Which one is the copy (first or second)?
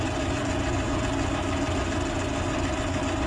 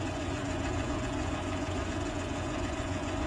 second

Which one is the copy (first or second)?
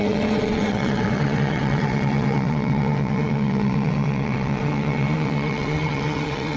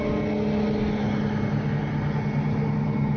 first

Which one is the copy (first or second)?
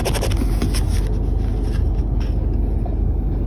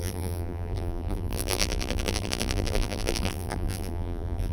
second